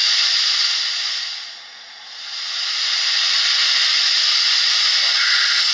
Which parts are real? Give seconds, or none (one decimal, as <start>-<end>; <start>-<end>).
3.2-3.9